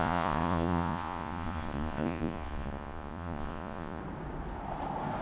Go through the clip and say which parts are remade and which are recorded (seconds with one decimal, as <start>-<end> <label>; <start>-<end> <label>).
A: 0.0-4.0 remade; 4.0-5.2 recorded

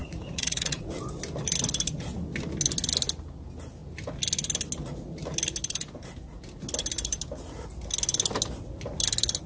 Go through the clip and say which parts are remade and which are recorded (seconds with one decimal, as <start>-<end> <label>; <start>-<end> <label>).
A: 0.0-0.9 remade; 0.9-9.5 recorded

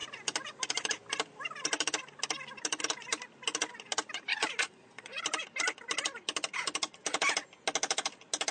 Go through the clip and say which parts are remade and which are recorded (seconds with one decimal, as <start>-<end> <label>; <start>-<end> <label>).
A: 0.0-4.3 recorded; 4.3-5.2 remade; 5.2-8.5 recorded

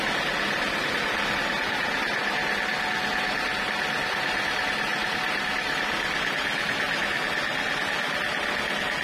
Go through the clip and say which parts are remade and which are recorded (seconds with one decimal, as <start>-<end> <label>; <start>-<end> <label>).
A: 0.0-9.0 recorded

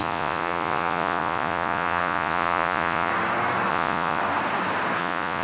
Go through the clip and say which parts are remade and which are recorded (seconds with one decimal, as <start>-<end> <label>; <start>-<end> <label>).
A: 0.0-3.1 remade; 3.1-3.7 recorded; 3.7-4.2 remade; 4.2-5.0 recorded; 5.0-5.4 remade